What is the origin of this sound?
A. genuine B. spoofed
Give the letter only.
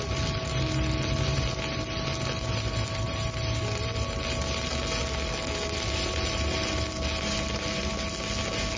A